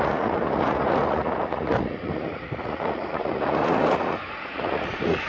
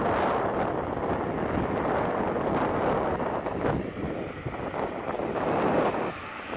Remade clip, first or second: first